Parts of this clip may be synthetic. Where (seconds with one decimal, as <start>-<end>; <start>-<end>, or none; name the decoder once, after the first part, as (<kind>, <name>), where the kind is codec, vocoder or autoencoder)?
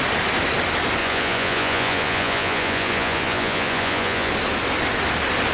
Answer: 1.0-4.3 (vocoder, Vocos)